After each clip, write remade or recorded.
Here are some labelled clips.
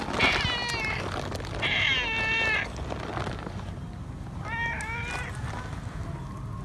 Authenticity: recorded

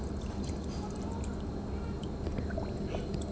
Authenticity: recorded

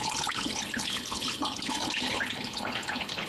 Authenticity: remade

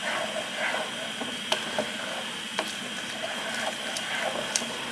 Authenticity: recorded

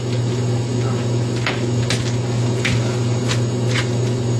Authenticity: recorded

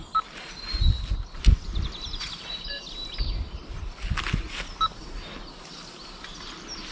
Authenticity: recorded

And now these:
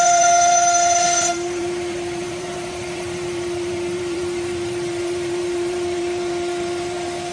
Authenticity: remade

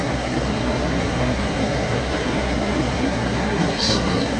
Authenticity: remade